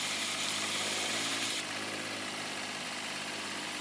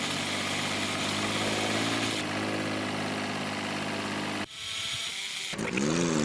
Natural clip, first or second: second